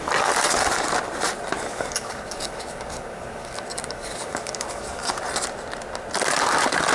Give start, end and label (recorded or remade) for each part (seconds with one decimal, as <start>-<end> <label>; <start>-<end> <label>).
0.0-1.7 recorded; 1.7-5.1 remade; 5.1-6.9 recorded

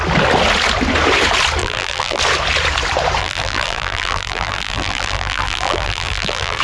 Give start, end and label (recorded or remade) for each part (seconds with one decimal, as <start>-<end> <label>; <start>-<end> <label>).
0.0-1.6 recorded; 1.6-2.2 remade; 2.2-3.2 recorded; 3.2-6.6 remade